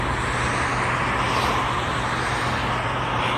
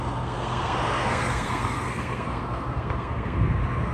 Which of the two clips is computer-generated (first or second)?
second